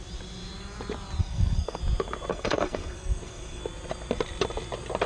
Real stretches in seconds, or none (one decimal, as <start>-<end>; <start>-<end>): 0.0-1.2; 1.8-2.3; 3.6-5.1